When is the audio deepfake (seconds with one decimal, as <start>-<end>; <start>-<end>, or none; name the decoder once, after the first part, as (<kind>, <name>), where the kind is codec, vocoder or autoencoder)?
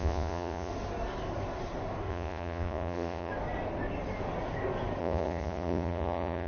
0.0-0.7 (vocoder, Vocos); 2.1-3.3; 5.0-6.5